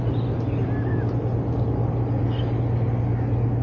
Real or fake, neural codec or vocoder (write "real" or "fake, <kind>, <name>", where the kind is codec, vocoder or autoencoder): real